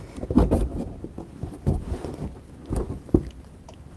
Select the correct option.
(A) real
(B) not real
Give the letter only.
A